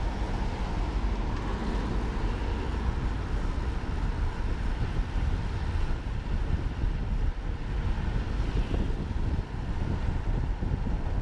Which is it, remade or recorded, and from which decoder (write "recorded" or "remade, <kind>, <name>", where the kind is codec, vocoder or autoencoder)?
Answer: recorded